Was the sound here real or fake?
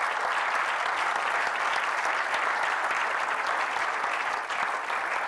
real